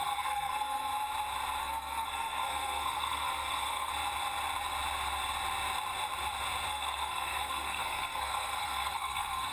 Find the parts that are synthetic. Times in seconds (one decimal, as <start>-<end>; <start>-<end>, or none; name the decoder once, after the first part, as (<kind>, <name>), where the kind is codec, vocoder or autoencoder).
0.0-0.9 (codec, SNAC); 1.6-3.9; 6.7-9.5